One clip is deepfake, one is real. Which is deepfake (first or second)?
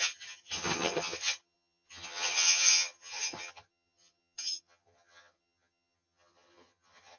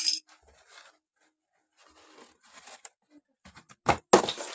first